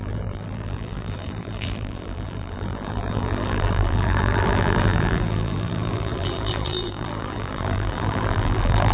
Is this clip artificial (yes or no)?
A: yes